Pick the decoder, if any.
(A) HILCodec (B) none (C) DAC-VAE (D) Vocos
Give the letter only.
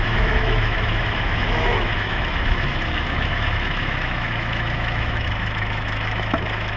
C